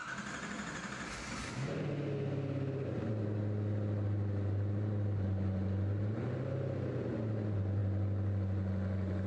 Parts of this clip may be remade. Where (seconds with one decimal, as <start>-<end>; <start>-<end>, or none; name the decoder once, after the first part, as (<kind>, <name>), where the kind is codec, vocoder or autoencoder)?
none